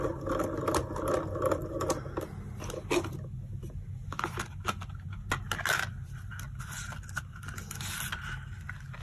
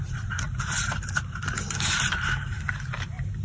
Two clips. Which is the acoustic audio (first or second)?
first